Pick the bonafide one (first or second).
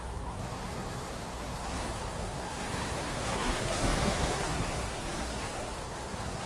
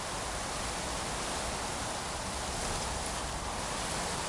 second